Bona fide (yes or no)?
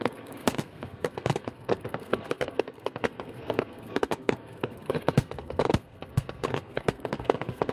no